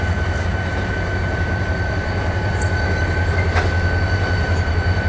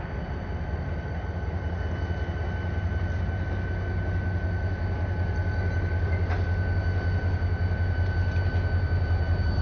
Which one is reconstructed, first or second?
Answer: first